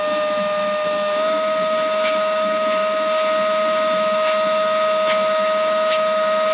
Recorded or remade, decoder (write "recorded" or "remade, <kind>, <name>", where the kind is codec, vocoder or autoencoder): remade, autoencoder, DAC-VAE